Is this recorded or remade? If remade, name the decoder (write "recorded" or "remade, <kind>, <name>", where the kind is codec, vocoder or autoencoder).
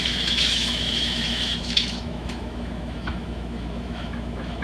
remade, autoencoder, DAC-VAE